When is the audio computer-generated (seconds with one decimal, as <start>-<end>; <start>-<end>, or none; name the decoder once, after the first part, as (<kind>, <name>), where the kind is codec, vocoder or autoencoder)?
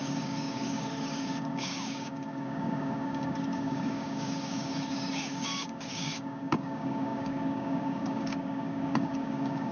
0.0-9.7 (codec, DAC)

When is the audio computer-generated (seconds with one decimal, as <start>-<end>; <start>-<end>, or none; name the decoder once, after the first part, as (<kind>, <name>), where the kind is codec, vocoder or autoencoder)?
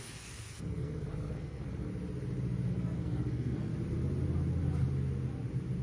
0.0-1.9 (codec, SNAC); 2.7-3.7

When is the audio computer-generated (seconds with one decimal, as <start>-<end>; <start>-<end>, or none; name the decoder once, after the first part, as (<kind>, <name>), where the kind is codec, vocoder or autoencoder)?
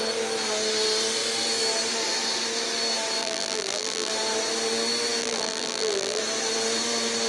3.2-4.1 (vocoder, BigVGAN v2); 5.2-6.2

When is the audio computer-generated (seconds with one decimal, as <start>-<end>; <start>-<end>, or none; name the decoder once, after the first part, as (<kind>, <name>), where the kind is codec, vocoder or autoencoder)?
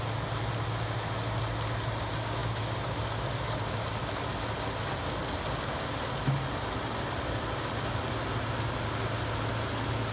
none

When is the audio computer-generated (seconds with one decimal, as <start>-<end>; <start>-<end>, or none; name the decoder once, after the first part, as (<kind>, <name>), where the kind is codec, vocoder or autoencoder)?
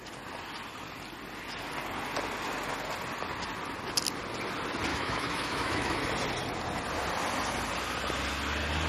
4.9-6.0 (autoencoder, DAC-VAE)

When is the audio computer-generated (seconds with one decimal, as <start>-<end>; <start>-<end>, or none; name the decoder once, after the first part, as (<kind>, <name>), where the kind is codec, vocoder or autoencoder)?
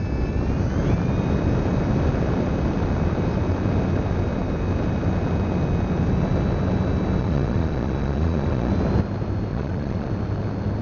7.2-8.7 (vocoder, Vocos); 9.5-10.1